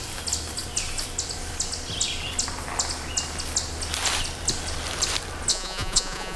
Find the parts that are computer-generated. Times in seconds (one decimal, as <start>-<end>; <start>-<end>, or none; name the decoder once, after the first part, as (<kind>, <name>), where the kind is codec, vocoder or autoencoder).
5.5-6.4 (vocoder, Vocos)